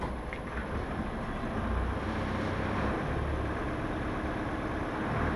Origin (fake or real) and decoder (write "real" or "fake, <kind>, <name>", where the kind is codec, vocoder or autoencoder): real